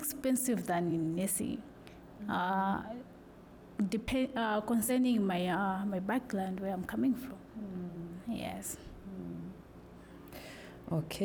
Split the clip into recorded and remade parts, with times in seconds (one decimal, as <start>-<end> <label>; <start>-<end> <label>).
0.0-0.9 recorded; 0.9-1.4 remade; 1.4-7.9 recorded; 7.9-9.8 remade; 9.8-11.2 recorded